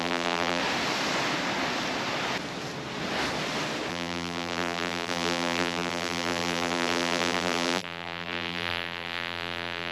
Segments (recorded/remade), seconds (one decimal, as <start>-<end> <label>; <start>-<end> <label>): 0.0-0.6 remade; 0.6-3.9 recorded; 3.9-9.9 remade